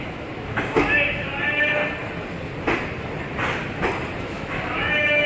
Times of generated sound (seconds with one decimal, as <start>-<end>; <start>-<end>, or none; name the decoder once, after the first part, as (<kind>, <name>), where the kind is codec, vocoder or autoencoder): 0.0-1.8 (autoencoder, DAC-VAE); 4.2-5.3